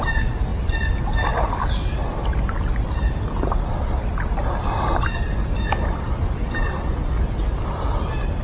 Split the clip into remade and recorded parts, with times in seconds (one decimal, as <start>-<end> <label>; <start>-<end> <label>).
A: 0.0-8.4 recorded